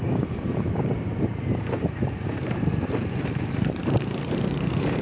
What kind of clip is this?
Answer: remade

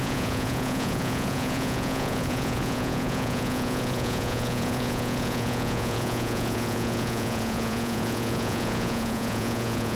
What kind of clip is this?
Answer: remade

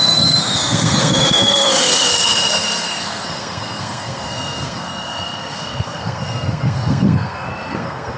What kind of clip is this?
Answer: remade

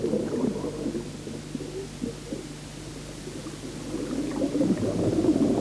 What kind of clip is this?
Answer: recorded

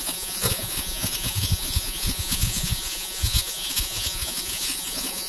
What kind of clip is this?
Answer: remade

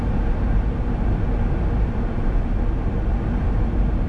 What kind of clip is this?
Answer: recorded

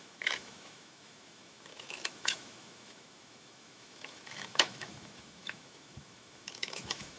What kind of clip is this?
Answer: remade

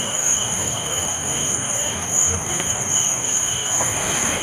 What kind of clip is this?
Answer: remade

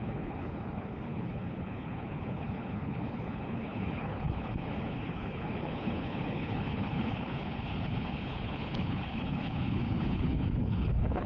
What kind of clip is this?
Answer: remade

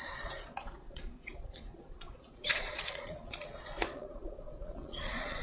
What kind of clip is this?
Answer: remade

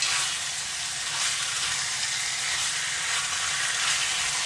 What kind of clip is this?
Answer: recorded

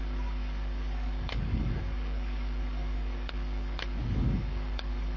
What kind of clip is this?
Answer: remade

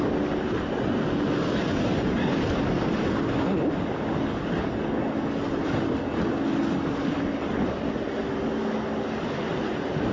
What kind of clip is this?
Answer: recorded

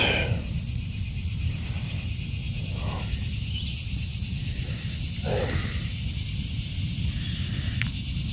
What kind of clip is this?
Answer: recorded